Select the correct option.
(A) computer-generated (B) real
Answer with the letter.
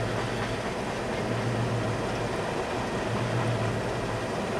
B